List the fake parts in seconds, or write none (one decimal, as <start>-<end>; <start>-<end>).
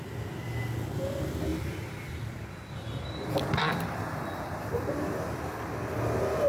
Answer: 1.5-4.6